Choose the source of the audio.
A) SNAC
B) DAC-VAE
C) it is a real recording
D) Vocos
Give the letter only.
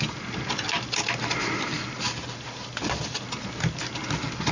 C